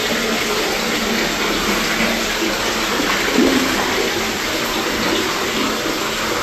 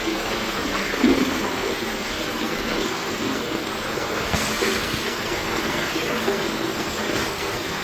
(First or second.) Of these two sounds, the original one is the first